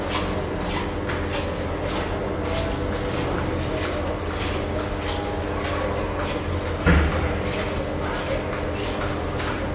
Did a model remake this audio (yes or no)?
no